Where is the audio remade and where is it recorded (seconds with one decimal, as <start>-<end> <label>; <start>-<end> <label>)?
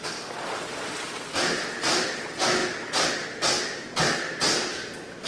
0.0-5.3 recorded